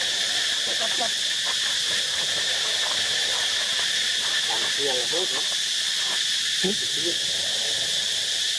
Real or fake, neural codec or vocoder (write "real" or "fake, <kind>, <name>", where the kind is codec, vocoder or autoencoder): real